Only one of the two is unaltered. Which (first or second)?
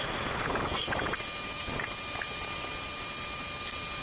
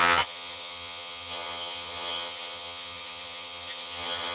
first